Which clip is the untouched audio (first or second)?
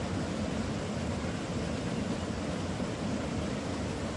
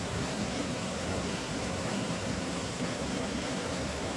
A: first